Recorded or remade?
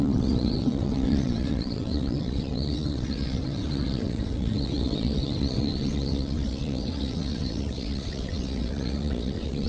remade